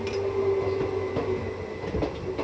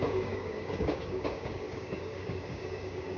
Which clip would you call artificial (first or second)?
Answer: second